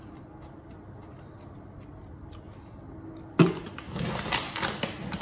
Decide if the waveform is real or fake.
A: real